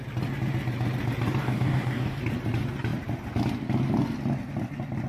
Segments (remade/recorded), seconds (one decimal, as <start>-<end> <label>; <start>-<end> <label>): 0.0-1.4 recorded; 1.4-2.2 remade; 2.2-5.1 recorded